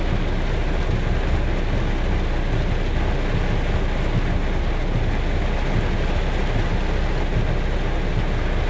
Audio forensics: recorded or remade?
recorded